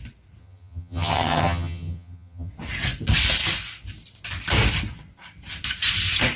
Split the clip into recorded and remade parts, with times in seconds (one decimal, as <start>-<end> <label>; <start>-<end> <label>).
0.0-0.4 recorded; 0.4-2.5 remade; 2.5-6.4 recorded